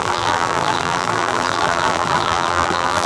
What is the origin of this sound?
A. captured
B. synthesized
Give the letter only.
B